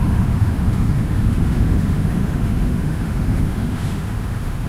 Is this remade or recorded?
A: remade